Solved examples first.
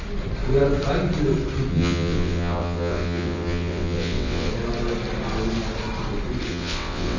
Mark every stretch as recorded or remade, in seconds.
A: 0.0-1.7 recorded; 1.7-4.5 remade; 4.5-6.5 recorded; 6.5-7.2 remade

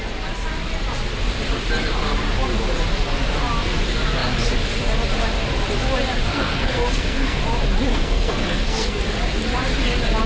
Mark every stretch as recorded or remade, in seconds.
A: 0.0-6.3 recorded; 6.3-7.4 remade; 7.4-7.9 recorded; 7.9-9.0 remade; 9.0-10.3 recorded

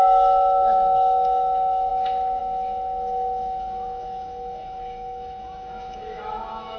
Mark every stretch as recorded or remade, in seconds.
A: 0.0-6.8 remade

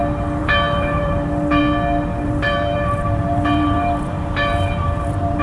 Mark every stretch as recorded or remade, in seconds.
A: 0.0-0.4 recorded; 0.4-1.6 remade; 1.6-2.1 recorded; 2.1-5.4 remade

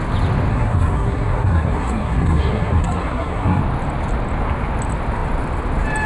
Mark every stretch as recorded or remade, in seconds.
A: 0.0-0.5 recorded; 0.5-3.6 remade; 3.6-6.1 recorded